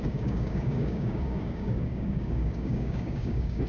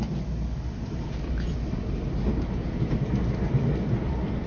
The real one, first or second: second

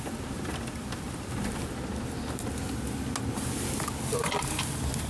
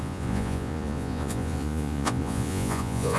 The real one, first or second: first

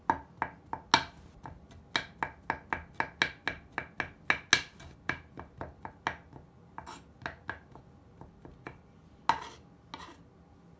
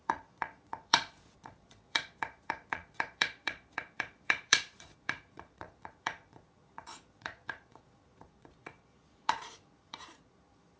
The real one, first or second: first